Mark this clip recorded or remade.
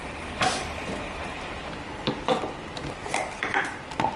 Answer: remade